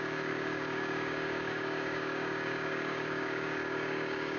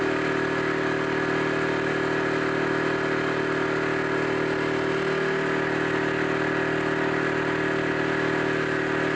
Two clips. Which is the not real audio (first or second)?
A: first